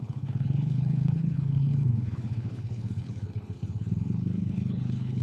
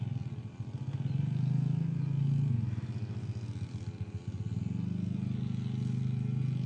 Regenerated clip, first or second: first